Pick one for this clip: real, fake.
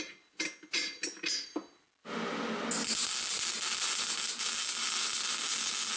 real